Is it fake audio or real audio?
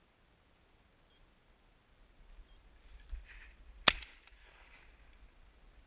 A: real